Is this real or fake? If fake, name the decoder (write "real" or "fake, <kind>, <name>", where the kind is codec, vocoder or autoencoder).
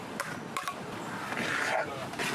real